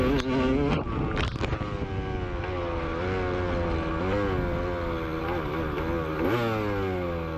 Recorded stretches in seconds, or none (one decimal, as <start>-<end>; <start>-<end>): 0.0-7.4